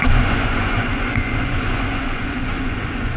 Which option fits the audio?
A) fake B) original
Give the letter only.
A